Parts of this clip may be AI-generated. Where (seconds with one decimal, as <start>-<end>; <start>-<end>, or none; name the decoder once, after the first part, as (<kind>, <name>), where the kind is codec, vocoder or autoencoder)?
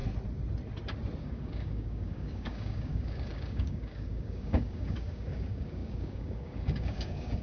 1.2-7.4 (codec, DAC)